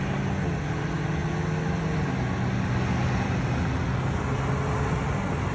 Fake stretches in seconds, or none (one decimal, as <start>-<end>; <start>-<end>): none